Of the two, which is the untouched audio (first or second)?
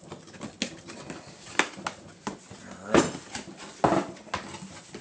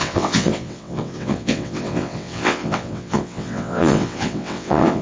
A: first